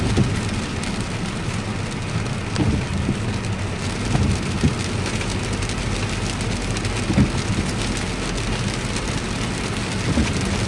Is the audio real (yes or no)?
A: yes